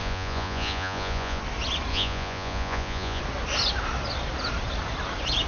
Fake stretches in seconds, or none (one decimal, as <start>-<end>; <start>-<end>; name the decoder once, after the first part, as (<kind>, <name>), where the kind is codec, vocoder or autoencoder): 0.0-1.4 (vocoder, Vocos); 1.9-3.2